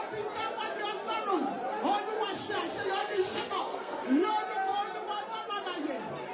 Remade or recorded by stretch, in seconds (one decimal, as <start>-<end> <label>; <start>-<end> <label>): 0.0-3.0 recorded; 3.0-4.3 remade; 4.3-6.3 recorded